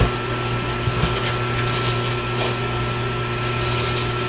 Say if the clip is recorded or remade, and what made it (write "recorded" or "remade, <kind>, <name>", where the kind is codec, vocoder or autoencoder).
recorded